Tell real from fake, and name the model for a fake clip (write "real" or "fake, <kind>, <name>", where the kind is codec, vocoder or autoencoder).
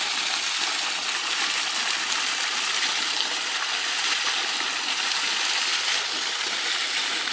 real